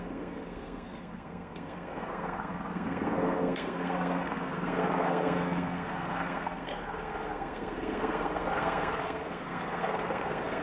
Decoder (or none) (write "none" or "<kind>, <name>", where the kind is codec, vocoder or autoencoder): codec, SNAC